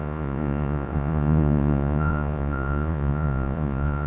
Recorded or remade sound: remade